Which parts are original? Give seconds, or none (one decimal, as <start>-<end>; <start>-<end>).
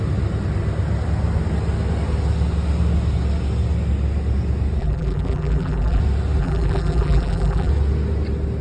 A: 0.0-4.8; 6.0-6.4; 7.7-8.6